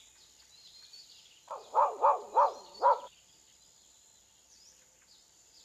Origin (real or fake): real